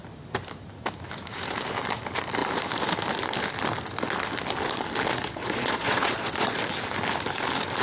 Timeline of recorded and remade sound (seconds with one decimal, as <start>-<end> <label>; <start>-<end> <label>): 0.0-5.1 recorded; 5.1-6.6 remade; 6.6-7.8 recorded